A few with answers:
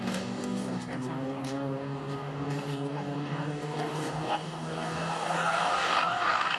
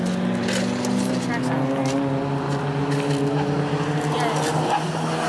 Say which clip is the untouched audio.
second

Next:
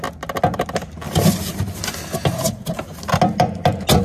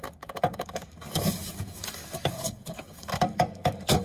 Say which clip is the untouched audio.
first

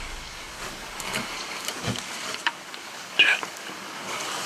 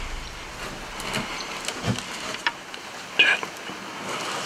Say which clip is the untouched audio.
second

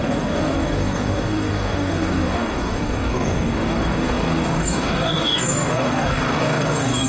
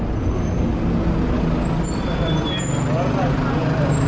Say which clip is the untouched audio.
second